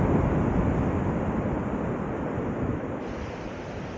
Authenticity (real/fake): real